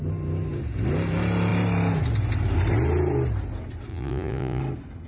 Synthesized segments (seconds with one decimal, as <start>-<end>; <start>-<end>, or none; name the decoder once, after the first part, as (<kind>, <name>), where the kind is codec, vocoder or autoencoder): 3.9-4.6 (vocoder, Vocos)